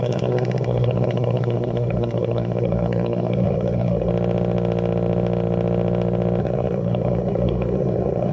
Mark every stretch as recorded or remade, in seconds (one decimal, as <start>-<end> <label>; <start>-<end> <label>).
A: 0.0-4.1 remade; 4.1-6.4 recorded; 6.4-8.3 remade